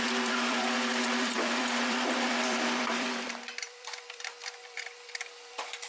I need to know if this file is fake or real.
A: fake